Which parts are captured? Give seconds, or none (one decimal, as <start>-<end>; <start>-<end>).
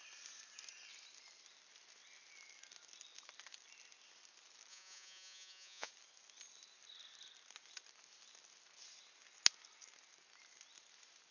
0.0-4.7; 5.9-11.3